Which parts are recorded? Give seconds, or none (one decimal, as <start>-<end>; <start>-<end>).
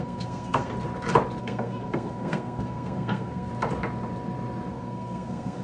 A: 0.7-1.4; 3.5-4.7